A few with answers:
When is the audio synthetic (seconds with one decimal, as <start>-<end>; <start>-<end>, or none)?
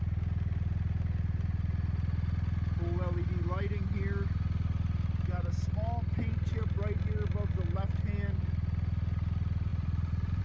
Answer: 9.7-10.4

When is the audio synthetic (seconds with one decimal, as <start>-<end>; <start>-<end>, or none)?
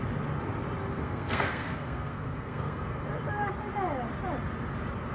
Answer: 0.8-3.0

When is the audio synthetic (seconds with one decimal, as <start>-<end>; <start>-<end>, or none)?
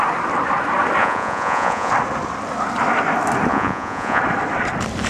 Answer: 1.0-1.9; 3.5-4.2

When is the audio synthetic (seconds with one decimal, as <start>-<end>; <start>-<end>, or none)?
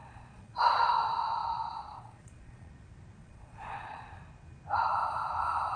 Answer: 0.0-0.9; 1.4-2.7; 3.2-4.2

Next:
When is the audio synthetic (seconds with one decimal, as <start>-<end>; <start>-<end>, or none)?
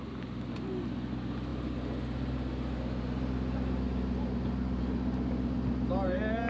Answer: none